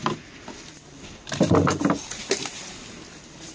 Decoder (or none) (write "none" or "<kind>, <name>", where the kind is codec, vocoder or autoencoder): none